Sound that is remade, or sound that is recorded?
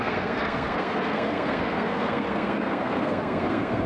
remade